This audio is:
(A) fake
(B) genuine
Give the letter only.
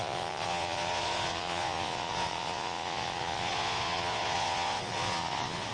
A